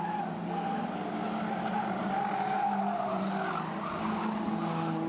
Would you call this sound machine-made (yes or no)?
no